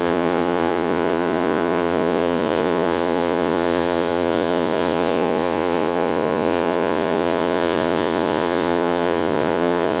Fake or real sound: fake